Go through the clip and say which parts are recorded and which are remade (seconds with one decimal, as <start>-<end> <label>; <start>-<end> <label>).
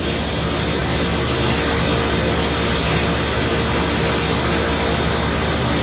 0.0-5.8 recorded